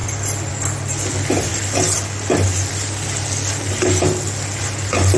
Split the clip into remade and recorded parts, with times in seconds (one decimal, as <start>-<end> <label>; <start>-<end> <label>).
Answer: 0.0-5.2 recorded